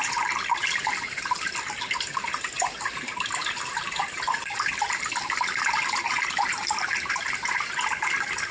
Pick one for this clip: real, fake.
real